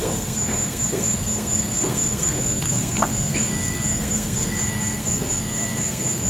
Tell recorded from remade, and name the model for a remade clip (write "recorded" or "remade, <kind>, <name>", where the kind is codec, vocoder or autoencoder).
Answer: remade, codec, SNAC